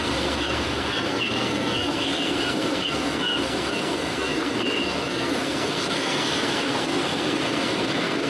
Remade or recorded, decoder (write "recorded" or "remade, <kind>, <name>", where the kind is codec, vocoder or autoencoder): remade, codec, SNAC